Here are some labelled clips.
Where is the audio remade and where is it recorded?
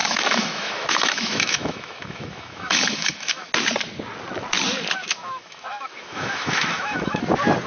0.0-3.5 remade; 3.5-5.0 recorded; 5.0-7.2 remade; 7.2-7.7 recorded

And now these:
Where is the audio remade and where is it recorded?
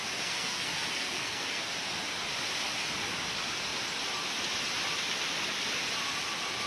0.0-1.7 remade; 1.7-6.7 recorded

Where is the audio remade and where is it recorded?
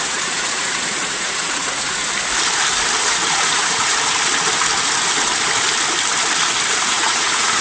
0.0-2.0 remade; 2.0-3.0 recorded; 3.0-3.9 remade; 3.9-6.7 recorded; 6.7-7.6 remade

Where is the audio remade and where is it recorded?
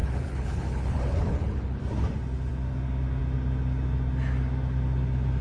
0.0-1.8 remade; 1.8-5.4 recorded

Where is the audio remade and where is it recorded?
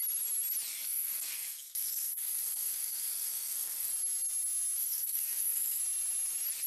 0.0-0.7 recorded; 0.7-3.9 remade; 3.9-4.8 recorded; 4.8-5.8 remade; 5.8-6.7 recorded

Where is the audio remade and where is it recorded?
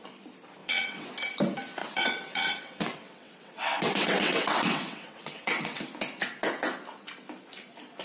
0.0-0.6 recorded; 0.6-1.1 remade; 1.1-1.8 recorded; 1.8-5.8 remade; 5.8-8.0 recorded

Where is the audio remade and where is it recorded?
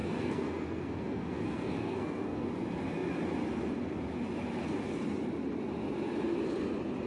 0.0-2.5 remade; 2.5-7.1 recorded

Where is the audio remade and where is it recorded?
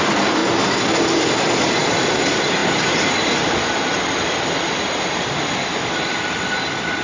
0.0-0.4 remade; 0.4-1.2 recorded; 1.2-7.0 remade